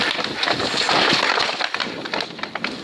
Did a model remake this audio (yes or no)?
yes